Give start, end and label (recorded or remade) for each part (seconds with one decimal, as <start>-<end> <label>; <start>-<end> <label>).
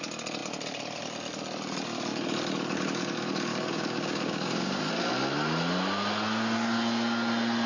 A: 0.0-3.5 recorded; 3.5-4.9 remade; 4.9-7.7 recorded